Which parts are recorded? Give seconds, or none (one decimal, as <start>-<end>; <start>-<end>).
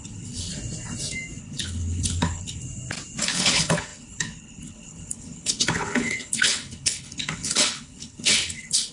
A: 0.5-1.4; 2.6-3.2